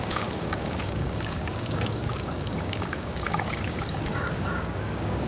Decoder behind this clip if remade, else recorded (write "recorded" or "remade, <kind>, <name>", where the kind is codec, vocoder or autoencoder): remade, codec, DAC